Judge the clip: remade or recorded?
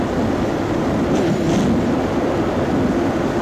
recorded